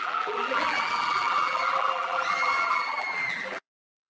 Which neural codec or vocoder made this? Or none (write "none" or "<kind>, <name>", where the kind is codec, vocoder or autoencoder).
vocoder, BigVGAN v2